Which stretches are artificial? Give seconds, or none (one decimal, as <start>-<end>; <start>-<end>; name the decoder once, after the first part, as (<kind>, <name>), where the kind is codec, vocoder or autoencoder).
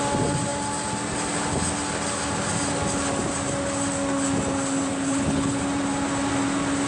4.9-5.6 (codec, HILCodec)